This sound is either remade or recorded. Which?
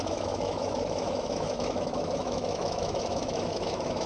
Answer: remade